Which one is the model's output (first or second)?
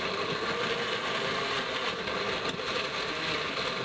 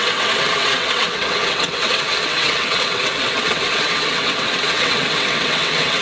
second